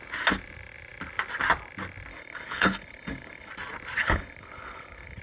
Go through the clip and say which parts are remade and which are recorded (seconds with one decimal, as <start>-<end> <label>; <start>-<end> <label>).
0.0-2.1 recorded; 2.1-3.5 remade; 3.5-4.0 recorded; 4.0-5.2 remade